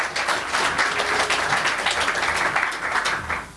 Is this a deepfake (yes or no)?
no